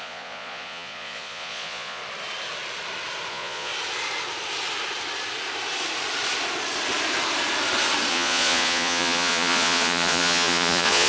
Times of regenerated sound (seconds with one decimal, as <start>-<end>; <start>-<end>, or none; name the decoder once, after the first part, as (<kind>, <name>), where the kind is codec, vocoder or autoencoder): 0.0-2.0 (vocoder, Vocos); 3.3-3.7; 8.1-11.1